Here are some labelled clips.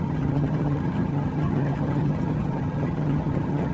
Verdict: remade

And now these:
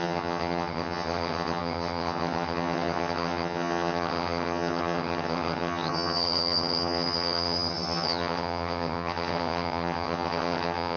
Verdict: remade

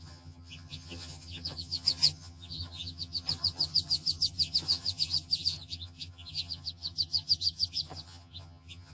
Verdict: remade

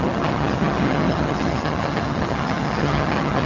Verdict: remade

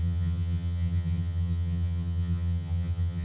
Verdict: remade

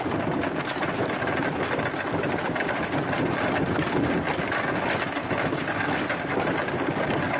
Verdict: recorded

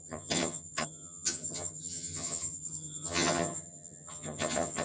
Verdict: remade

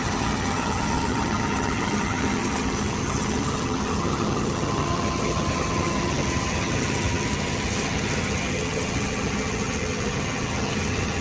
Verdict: remade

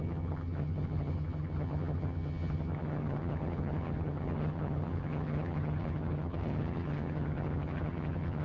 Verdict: remade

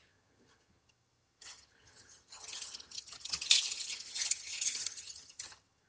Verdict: remade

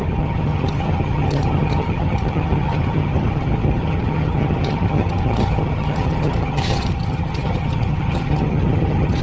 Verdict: remade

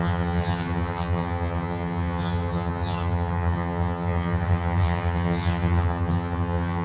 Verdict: remade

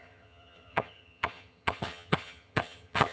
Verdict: remade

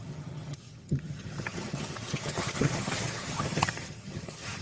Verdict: remade